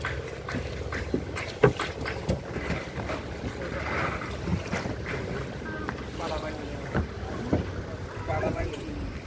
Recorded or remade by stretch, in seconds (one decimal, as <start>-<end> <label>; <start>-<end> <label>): 0.0-8.3 recorded; 8.3-8.9 remade; 8.9-9.3 recorded